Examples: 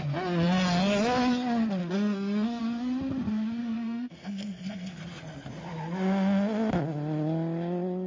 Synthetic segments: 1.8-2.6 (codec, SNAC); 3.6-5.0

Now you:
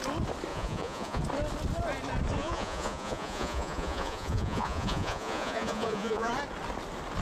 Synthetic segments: 0.5-1.2 (vocoder, Vocos); 2.4-6.3

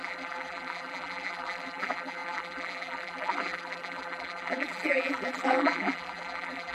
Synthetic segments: 0.0-6.7 (vocoder, BigVGAN v2)